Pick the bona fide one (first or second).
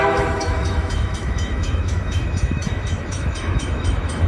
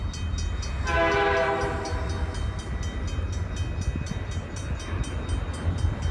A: second